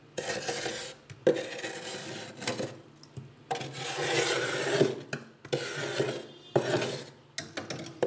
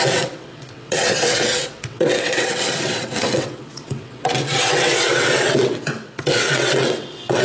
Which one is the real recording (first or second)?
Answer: first